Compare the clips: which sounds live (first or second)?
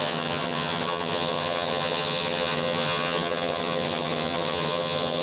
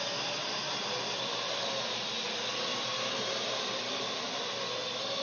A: second